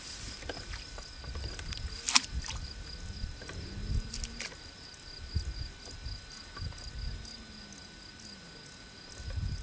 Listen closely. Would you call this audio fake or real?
real